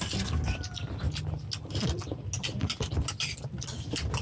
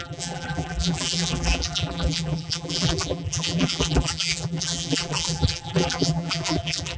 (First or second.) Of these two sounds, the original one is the first